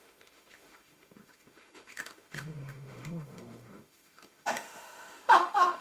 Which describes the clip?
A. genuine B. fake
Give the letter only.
B